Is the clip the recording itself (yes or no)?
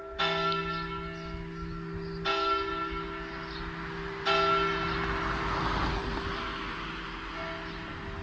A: yes